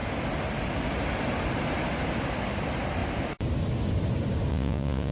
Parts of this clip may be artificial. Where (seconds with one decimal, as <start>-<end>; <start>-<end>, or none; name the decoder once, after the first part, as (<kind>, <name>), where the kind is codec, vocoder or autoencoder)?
4.5-5.1 (vocoder, Vocos)

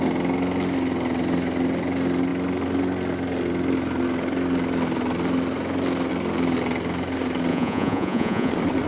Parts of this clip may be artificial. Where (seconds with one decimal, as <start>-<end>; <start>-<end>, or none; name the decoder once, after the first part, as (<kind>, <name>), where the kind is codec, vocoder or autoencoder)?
7.5-8.5 (vocoder, Vocos)

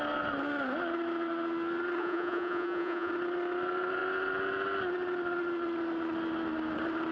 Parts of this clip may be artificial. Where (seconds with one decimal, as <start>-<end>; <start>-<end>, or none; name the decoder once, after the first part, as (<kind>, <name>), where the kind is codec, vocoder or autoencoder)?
2.0-3.1 (vocoder, Vocos)

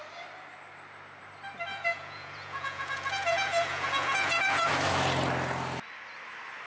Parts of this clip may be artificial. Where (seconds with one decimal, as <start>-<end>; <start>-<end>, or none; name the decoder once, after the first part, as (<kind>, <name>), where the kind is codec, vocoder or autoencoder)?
1.7-4.7 (vocoder, Vocos)

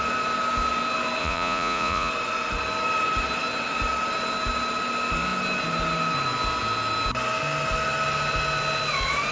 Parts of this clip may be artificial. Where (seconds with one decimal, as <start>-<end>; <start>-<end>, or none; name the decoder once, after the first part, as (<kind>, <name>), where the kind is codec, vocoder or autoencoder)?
1.2-2.1 (vocoder, Vocos)

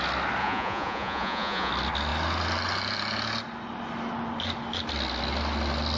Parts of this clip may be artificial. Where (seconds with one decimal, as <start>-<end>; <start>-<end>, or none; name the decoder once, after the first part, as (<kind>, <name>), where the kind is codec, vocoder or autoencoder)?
0.4-1.7 (vocoder, Vocos)